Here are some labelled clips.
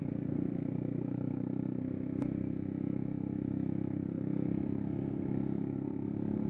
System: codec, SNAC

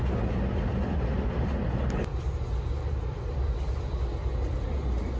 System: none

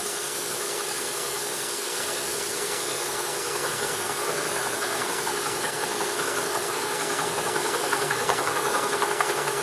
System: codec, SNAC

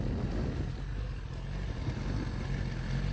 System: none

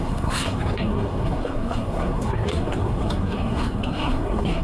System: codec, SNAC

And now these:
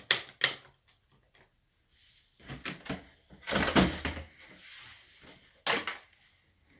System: none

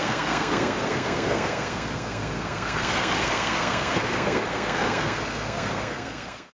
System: codec, SNAC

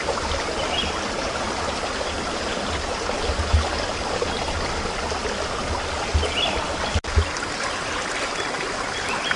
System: none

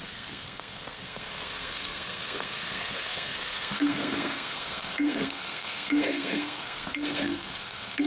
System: codec, SNAC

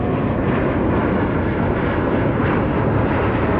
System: none